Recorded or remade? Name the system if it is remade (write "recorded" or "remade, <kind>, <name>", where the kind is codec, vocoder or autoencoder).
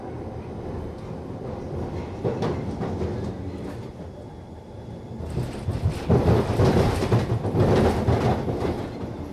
recorded